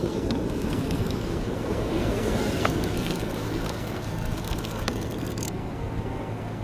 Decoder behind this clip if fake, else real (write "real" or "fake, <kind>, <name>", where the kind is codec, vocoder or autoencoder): fake, codec, SNAC